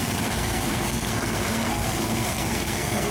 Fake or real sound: fake